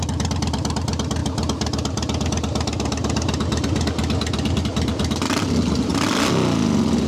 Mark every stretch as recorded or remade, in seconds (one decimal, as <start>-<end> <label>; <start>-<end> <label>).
0.0-1.2 remade; 1.2-4.6 recorded; 4.6-5.9 remade; 5.9-7.1 recorded